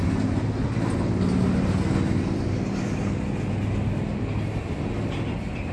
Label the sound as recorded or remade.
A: recorded